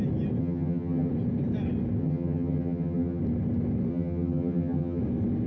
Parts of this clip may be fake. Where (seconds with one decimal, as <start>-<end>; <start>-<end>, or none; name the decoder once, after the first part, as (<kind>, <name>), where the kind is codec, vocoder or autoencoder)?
0.4-1.1 (vocoder, HiFi-GAN); 2.0-3.2; 3.9-5.0